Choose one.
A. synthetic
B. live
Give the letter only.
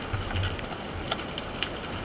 B